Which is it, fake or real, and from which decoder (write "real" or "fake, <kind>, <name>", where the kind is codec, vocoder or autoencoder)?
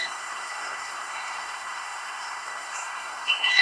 fake, codec, SNAC